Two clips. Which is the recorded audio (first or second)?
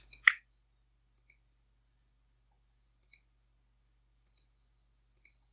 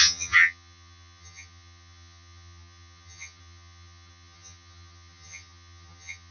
first